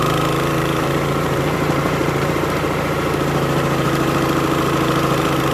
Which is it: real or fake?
fake